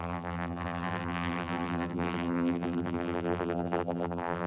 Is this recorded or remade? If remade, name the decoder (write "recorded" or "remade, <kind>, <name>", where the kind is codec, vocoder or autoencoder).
remade, vocoder, BigVGAN v2